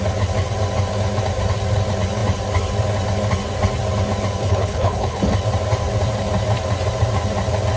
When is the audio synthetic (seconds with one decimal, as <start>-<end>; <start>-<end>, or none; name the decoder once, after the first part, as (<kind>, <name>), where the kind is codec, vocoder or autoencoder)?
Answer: 4.4-5.2 (codec, HILCodec)

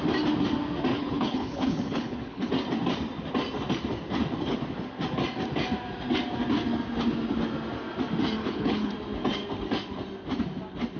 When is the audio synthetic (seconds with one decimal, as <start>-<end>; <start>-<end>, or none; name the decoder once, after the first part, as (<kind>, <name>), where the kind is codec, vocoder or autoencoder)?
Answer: 0.9-2.5 (codec, HILCodec); 8.4-8.9

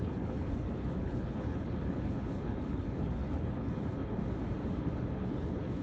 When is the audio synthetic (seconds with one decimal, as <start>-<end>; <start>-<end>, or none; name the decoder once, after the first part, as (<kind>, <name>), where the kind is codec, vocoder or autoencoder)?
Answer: 0.0-4.2 (codec, HILCodec); 4.8-5.8